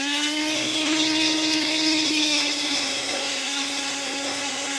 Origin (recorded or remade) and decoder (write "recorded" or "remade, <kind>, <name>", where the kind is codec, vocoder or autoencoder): remade, codec, SNAC